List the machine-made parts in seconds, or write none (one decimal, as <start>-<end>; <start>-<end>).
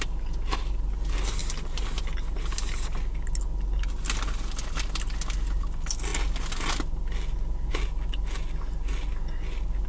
none